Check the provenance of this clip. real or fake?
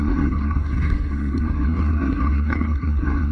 fake